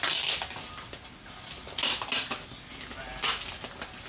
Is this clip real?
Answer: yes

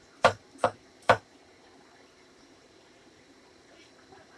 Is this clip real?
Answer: no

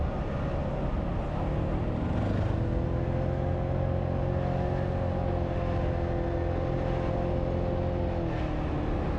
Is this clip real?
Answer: yes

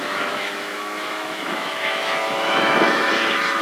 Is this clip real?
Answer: no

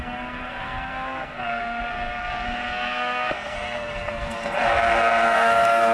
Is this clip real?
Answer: no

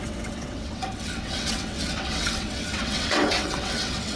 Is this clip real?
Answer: no